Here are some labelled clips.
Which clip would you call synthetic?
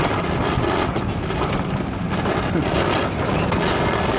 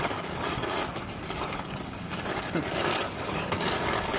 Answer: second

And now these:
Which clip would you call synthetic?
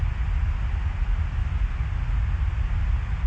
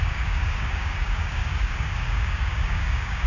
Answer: second